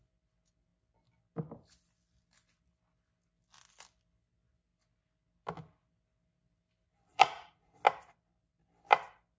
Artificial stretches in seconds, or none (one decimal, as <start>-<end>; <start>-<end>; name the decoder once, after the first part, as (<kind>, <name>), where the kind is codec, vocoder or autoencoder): 7.1-7.8 (vocoder, Vocos)